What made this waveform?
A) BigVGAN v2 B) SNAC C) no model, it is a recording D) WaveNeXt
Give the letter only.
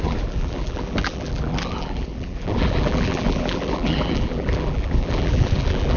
A